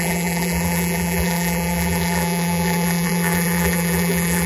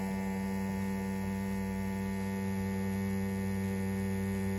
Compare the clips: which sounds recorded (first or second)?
second